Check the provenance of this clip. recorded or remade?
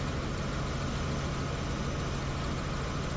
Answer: recorded